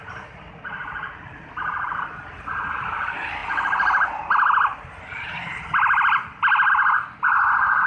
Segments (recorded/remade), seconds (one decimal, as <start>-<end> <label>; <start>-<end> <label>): 0.0-7.9 recorded